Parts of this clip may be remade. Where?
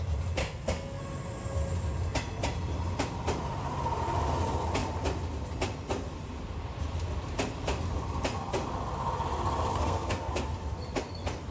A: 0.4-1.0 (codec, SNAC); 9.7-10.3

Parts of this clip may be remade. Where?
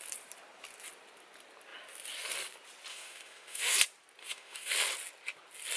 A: 2.9-3.7 (autoencoder, DAC-VAE); 4.2-4.7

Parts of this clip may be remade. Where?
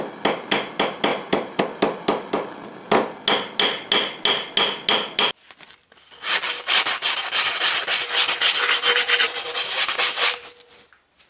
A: 1.1-1.6 (vocoder, BigVGAN v2)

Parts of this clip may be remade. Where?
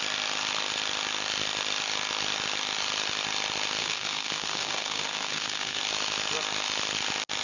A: 3.8-5.8 (codec, SNAC)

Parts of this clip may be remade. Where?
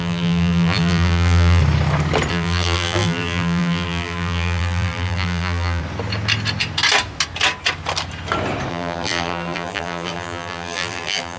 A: 0.0-1.6 (vocoder, BigVGAN v2); 2.3-5.8; 8.7-11.4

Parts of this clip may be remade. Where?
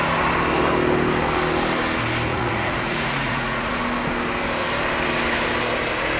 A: 2.3-3.7 (vocoder, Vocos)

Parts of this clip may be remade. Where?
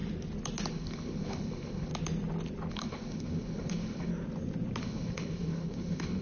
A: 0.7-1.9 (codec, HILCodec); 2.7-4.1; 4.8-6.2